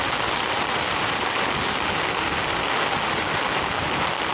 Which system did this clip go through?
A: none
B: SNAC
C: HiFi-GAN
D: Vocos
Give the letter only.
A